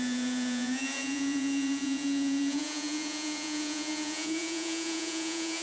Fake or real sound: fake